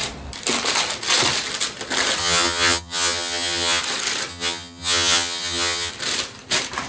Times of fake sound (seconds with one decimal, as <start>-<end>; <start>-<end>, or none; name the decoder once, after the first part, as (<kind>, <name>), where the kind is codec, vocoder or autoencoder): 2.2-3.8 (vocoder, HiFi-GAN); 4.3-5.9